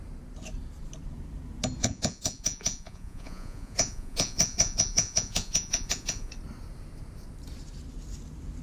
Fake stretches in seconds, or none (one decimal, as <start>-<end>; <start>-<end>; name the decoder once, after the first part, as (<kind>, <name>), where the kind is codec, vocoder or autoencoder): 1.8-6.3 (vocoder, Vocos)